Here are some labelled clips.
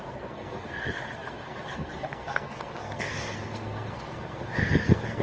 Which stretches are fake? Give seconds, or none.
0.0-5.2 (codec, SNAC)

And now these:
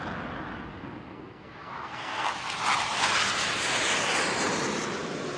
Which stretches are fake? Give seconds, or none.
0.7-2.3 (codec, SNAC)

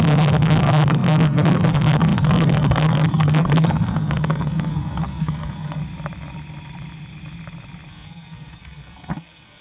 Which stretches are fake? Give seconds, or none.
0.0-5.8 (codec, SNAC); 7.9-9.6

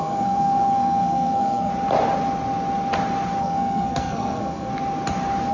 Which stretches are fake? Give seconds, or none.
0.0-1.7 (codec, SNAC); 3.4-4.7

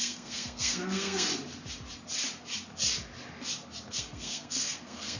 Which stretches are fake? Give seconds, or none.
0.0-1.3 (codec, SNAC); 3.9-5.2